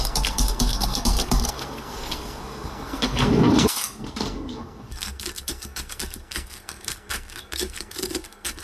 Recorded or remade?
remade